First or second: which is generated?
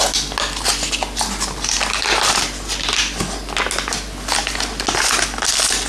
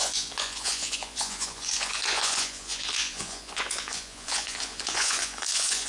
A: second